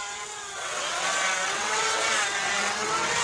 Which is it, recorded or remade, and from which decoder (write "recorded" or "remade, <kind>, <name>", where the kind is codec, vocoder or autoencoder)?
remade, vocoder, WaveNeXt